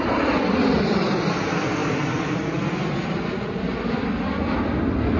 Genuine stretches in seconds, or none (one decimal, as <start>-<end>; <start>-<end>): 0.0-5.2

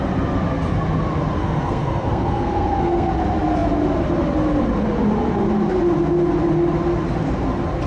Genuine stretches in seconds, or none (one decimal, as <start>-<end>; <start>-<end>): 0.0-1.4; 3.1-7.9

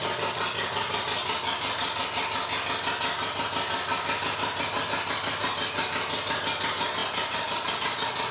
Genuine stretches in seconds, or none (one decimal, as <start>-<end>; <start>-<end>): 0.0-8.3

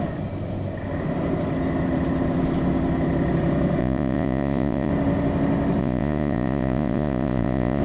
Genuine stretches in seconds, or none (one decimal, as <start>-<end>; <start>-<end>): 0.0-3.8; 4.9-5.8